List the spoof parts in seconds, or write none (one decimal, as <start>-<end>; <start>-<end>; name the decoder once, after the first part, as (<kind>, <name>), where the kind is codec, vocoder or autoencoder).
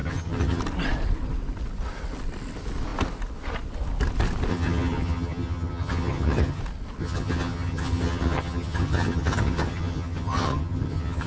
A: 0.0-0.6 (vocoder, HiFi-GAN); 4.5-6.6; 7.0-11.3